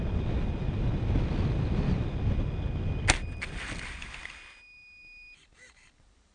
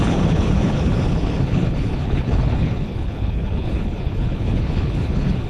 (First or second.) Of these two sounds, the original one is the first